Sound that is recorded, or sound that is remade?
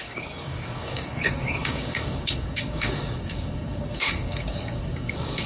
remade